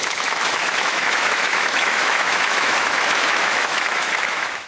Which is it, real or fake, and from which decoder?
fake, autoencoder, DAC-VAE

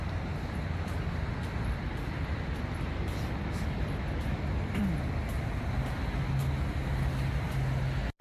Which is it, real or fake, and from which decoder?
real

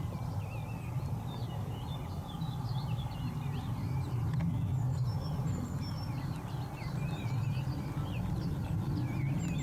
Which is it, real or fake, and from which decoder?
real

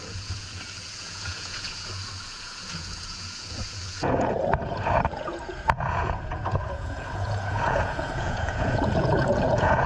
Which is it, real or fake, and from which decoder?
fake, vocoder, Vocos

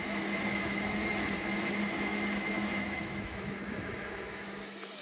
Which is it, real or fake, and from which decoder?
fake, autoencoder, DAC-VAE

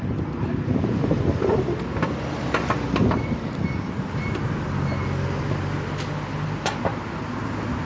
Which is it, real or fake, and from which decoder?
real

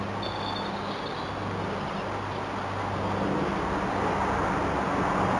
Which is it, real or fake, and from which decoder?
real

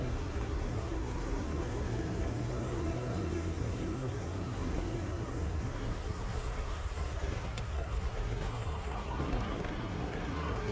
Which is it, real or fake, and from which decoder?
fake, codec, SNAC